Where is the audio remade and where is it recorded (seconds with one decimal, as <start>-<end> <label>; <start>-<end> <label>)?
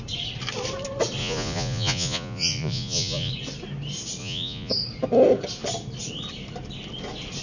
0.0-1.2 recorded; 1.2-3.3 remade; 3.3-4.2 recorded; 4.2-4.7 remade; 4.7-7.4 recorded